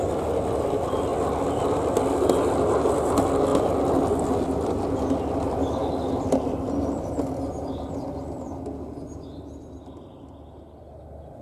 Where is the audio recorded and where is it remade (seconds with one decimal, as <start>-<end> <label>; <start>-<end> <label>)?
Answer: 0.0-11.4 recorded